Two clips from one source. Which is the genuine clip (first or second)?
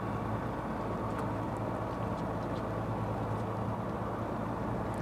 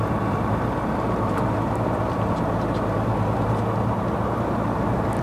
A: first